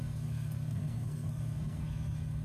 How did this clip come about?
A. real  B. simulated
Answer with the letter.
B